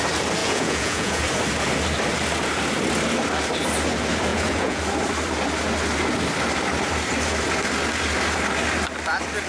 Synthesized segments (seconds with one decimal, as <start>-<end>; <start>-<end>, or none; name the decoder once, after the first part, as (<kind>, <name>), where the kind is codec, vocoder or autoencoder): 0.4-1.2 (vocoder, Vocos); 4.3-4.8